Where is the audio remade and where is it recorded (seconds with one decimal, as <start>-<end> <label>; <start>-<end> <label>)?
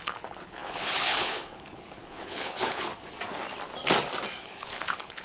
0.0-2.9 remade; 2.9-4.4 recorded; 4.4-5.2 remade